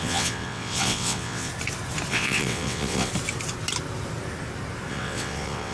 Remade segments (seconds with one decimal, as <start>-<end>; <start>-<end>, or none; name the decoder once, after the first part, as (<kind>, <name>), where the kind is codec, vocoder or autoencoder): 0.0-1.5 (vocoder, WaveNeXt); 2.1-3.1; 4.9-5.7